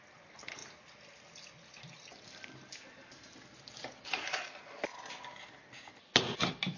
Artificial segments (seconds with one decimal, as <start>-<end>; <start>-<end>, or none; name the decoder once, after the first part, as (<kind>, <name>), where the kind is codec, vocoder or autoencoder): none